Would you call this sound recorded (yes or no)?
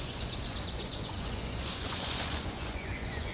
no